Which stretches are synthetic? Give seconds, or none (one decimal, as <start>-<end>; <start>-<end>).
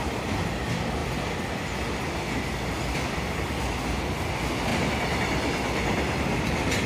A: none